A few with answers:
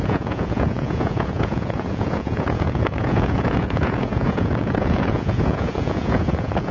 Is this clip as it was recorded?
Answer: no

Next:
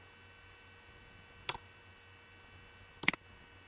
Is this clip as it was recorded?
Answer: yes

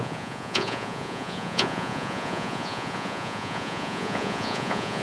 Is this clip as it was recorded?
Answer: no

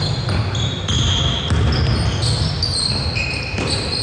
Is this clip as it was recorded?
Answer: yes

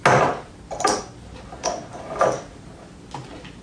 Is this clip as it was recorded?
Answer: yes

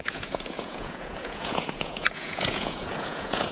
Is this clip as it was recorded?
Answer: no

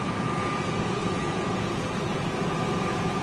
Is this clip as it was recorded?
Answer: no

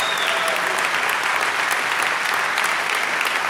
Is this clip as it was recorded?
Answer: yes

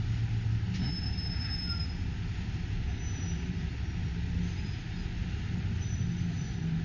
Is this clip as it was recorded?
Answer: yes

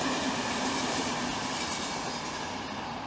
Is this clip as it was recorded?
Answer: yes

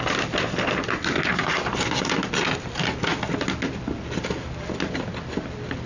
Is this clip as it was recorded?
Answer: yes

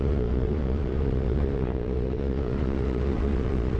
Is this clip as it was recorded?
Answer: no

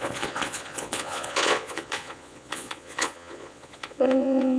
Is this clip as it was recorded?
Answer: no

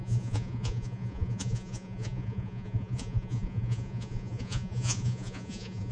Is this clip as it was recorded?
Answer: no